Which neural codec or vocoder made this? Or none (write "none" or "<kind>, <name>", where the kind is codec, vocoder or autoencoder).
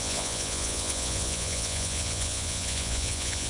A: vocoder, Vocos